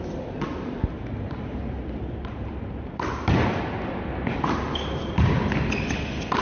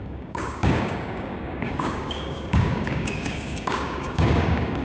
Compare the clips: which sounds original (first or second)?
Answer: first